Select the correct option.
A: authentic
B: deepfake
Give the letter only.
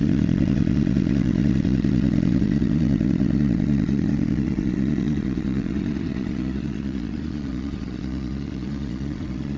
B